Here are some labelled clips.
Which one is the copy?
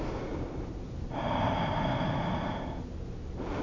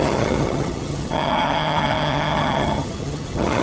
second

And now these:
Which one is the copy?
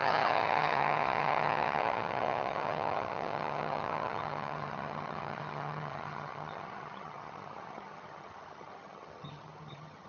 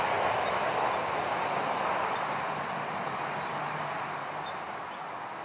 first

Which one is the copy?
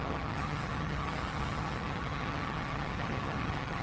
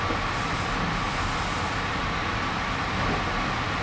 first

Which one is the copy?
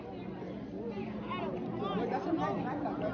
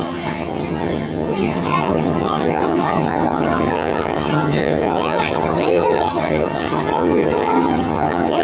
second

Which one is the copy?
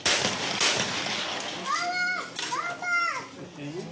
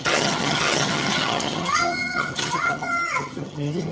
second